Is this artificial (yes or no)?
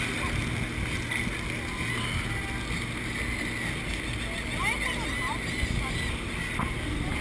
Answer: no